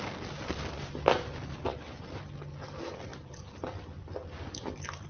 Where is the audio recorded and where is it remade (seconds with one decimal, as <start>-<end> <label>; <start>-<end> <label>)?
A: 0.0-1.7 recorded; 1.7-2.2 remade; 2.2-5.1 recorded